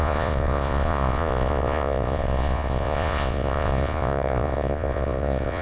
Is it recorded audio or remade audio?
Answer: remade